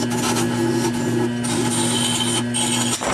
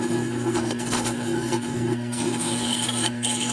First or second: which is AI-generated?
second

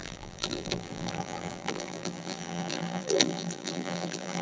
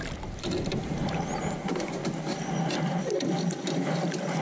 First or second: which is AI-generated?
first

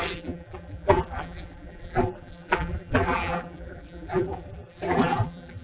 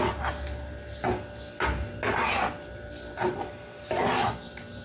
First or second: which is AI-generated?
first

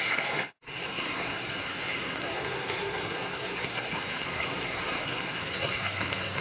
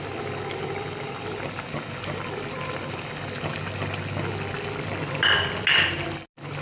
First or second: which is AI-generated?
first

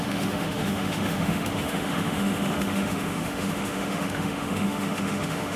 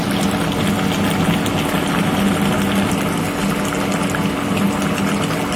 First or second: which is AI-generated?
first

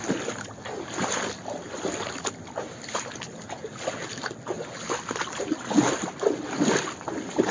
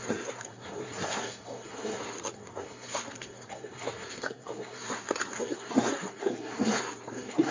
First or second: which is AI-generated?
second